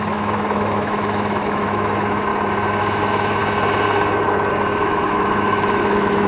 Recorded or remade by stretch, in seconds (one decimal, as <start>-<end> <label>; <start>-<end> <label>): 0.0-2.3 remade; 2.3-2.8 recorded; 2.8-3.4 remade; 3.4-4.8 recorded; 4.8-6.3 remade